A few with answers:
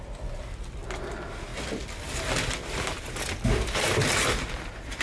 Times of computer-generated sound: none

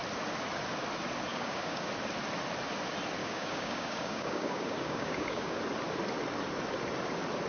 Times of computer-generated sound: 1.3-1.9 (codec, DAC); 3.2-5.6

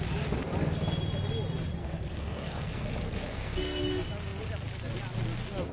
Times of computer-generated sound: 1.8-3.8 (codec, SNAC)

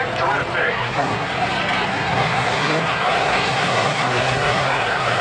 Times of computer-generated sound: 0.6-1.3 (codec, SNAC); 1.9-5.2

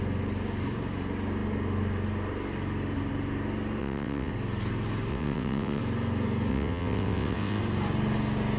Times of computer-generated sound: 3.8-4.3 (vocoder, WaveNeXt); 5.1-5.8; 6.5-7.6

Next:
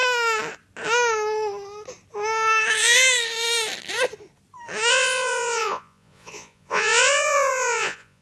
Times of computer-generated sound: 4.9-8.2 (vocoder, Vocos)

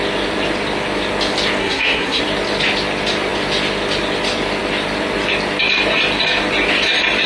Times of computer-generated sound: 1.6-2.2 (codec, SNAC)

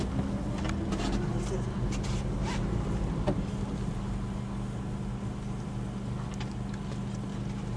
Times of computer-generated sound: none